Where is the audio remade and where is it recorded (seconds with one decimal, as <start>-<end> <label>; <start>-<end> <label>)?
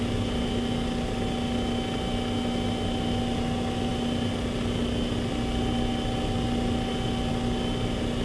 0.0-8.2 recorded